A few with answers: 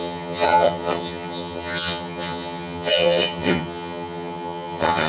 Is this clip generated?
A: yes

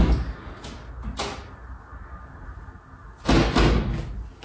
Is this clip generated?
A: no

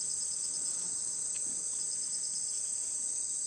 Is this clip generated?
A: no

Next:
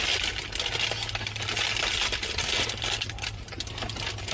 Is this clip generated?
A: no